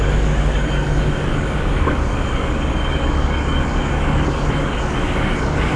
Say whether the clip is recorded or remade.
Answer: remade